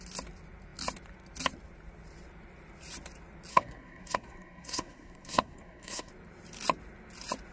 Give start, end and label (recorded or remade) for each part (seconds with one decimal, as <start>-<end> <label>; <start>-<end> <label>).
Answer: 0.0-3.5 recorded; 3.5-6.1 remade; 6.1-7.5 recorded